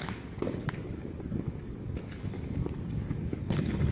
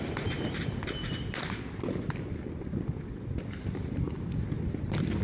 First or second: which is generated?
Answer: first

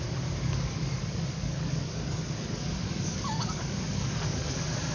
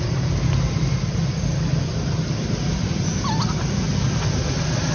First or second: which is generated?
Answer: first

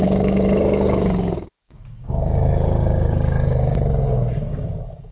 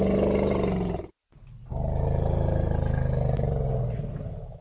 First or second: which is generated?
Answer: first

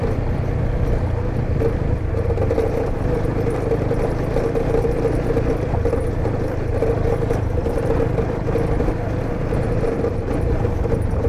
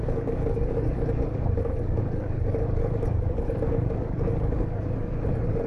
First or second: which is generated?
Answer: second